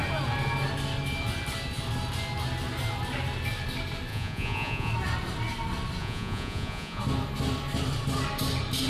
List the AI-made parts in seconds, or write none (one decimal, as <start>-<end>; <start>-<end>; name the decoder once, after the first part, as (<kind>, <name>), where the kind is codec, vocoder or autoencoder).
4.1-4.9 (vocoder, Vocos); 6.0-7.0